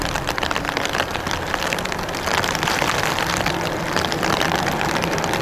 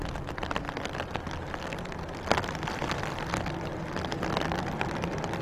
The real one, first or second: second